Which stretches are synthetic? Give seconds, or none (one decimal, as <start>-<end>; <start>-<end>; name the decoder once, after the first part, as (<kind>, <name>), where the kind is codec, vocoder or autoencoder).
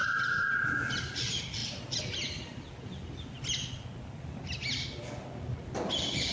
0.0-0.7 (vocoder, BigVGAN v2)